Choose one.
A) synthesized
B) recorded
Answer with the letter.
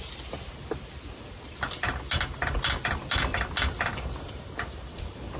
B